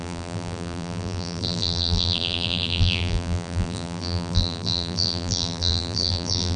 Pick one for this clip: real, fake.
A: fake